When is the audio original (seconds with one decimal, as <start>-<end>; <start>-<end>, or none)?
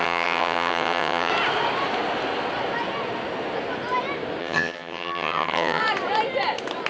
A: 1.3-4.4; 5.8-6.9